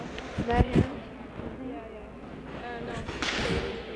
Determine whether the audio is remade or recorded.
recorded